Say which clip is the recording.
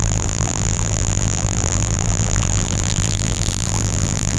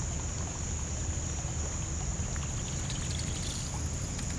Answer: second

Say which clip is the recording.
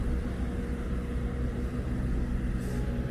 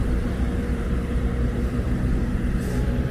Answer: first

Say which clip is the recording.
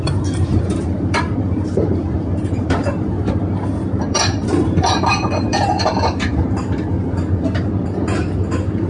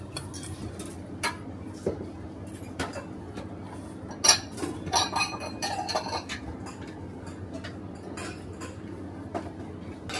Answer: second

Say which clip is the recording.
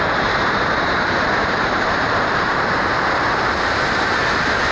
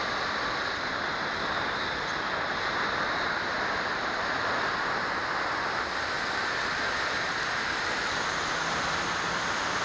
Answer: second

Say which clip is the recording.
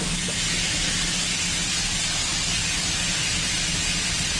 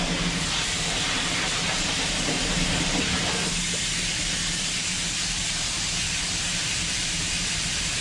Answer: first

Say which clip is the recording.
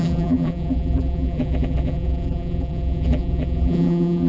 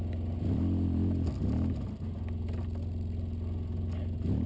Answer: second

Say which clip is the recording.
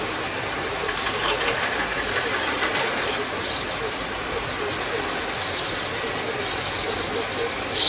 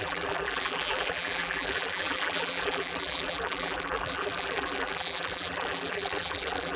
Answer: first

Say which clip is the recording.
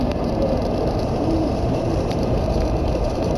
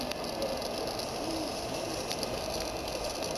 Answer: second